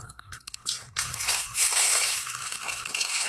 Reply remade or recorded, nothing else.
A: remade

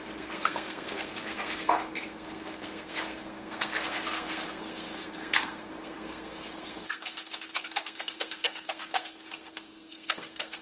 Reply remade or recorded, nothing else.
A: remade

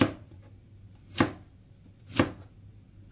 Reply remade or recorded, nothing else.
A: recorded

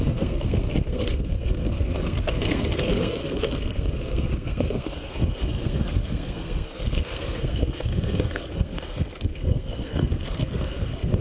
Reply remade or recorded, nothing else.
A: remade